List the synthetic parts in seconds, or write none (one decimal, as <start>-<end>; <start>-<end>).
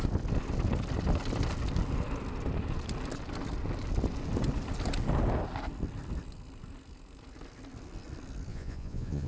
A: 8.5-9.3